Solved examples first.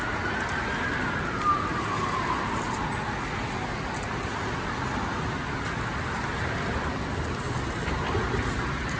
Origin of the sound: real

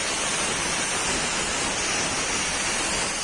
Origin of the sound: real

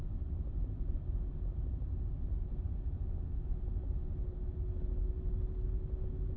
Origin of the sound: real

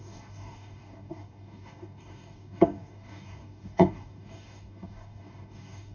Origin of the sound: fake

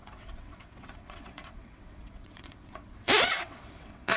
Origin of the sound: fake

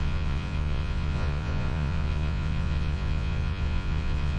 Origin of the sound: fake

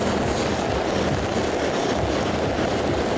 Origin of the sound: real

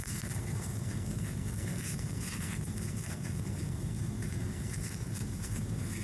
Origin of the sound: fake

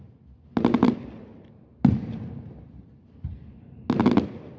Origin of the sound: real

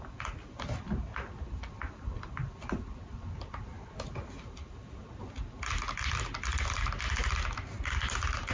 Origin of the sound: real